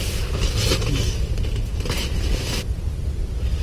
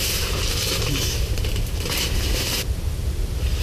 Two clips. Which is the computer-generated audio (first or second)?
second